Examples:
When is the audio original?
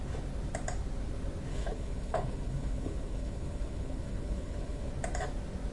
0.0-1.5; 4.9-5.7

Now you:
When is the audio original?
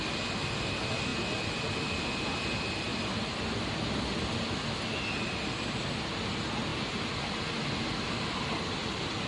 0.0-9.3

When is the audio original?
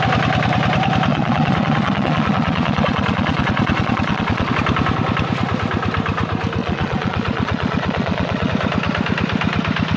0.0-1.1; 4.5-6.6; 8.5-10.0